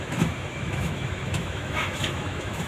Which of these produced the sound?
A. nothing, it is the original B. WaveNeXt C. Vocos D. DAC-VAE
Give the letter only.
D